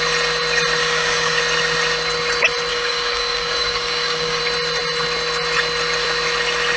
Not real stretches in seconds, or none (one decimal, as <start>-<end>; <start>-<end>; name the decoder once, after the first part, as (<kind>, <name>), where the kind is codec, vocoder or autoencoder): 0.8-1.4 (codec, DAC); 2.7-4.4